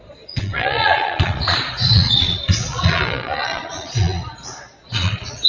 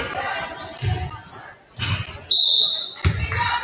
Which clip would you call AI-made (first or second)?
first